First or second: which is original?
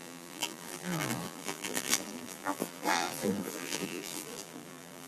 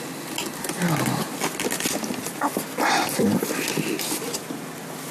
second